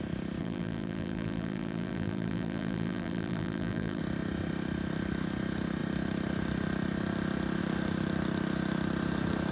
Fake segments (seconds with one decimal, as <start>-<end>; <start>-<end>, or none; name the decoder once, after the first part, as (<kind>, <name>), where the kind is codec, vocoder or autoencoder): 0.4-4.0 (vocoder, BigVGAN v2)